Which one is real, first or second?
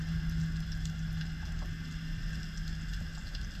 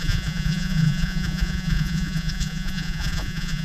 first